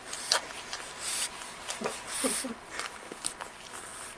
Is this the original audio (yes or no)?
yes